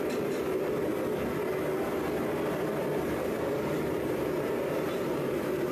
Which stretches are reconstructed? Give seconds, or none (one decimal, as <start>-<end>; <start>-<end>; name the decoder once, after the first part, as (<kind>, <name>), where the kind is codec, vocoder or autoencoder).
0.0-0.9 (vocoder, BigVGAN v2); 3.0-5.7